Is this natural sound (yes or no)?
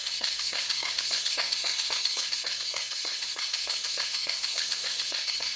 no